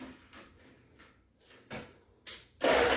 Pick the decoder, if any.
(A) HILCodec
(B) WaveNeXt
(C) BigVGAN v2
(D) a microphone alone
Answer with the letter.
D